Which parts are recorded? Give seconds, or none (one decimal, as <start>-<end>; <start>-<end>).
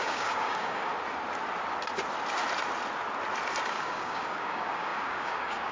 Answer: 0.9-3.7